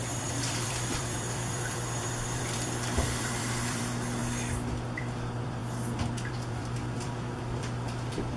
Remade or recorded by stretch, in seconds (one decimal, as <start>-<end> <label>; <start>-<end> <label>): 0.0-4.2 remade; 4.2-4.7 recorded; 4.7-5.6 remade; 5.6-6.3 recorded; 6.3-8.4 remade